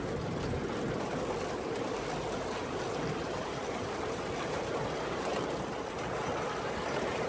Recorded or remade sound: recorded